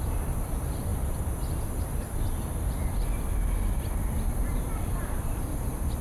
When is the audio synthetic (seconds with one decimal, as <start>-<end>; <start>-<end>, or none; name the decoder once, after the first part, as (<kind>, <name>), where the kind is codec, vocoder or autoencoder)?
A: 0.0-0.9 (vocoder, BigVGAN v2); 1.7-6.0